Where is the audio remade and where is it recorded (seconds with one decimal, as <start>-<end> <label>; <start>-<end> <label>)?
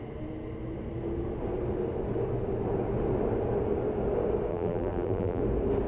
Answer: 0.0-4.5 recorded; 4.5-5.4 remade; 5.4-5.9 recorded